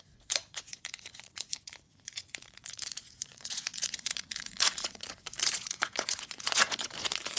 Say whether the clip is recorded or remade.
remade